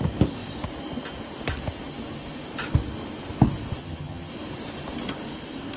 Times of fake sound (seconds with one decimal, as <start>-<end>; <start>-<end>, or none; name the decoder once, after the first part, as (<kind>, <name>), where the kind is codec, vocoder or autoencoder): 3.8-4.3 (vocoder, HiFi-GAN)